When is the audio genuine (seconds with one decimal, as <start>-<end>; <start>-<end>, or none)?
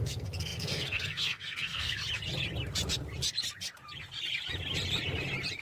2.0-5.6